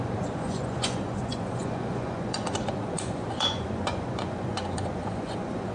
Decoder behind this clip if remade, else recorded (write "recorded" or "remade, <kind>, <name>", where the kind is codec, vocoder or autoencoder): remade, vocoder, Vocos